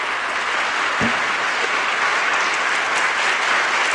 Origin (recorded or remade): recorded